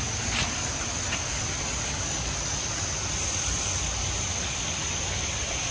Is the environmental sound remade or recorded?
recorded